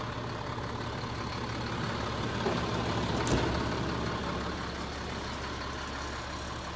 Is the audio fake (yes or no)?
no